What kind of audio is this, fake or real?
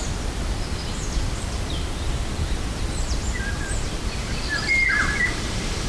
fake